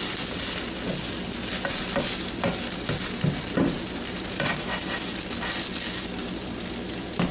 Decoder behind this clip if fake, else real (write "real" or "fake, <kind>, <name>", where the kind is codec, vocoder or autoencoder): real